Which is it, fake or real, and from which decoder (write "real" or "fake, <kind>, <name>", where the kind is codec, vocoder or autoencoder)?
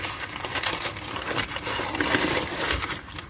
real